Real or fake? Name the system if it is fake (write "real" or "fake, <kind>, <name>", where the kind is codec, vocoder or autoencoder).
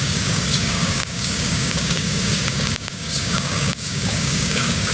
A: fake, codec, DAC